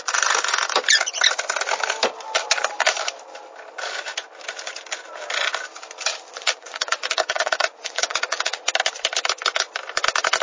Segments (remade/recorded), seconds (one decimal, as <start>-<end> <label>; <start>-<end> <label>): 0.0-6.1 recorded; 6.1-8.7 remade; 8.7-10.4 recorded